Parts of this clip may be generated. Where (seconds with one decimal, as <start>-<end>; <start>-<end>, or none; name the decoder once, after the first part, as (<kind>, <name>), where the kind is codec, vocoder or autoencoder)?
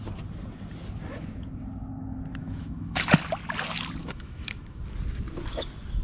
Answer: 2.4-3.1 (autoencoder, DAC-VAE); 4.0-4.8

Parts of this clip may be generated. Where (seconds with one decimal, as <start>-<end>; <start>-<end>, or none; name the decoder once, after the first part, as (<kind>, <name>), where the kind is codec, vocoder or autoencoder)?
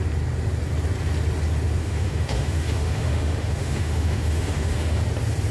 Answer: 1.8-5.0 (autoencoder, DAC-VAE)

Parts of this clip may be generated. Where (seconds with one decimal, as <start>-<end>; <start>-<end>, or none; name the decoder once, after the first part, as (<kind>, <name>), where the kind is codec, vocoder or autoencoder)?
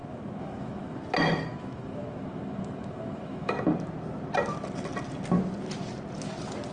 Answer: 0.0-1.0 (autoencoder, DAC-VAE); 1.5-3.5